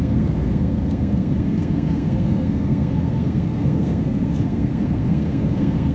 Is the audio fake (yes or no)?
yes